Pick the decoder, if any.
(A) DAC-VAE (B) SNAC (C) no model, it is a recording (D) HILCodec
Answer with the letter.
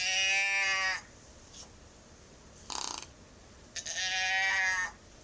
C